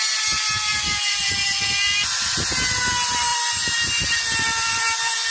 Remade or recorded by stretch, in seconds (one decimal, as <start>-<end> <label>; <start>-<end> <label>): 0.0-0.7 recorded; 0.7-1.9 remade; 1.9-3.3 recorded; 3.3-5.3 remade